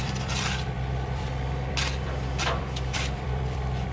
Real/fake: fake